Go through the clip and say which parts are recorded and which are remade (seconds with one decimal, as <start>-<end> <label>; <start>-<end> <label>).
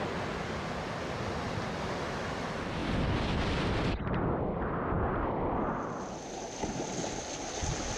0.0-8.0 recorded